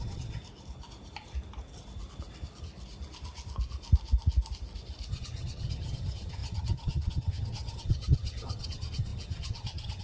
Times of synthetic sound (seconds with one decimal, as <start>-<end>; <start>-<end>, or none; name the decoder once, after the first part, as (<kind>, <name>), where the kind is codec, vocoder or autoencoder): 0.0-0.4 (vocoder, HiFi-GAN); 5.1-10.0